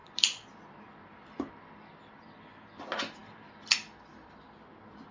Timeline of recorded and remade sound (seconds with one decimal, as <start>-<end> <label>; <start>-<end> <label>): 0.0-5.1 recorded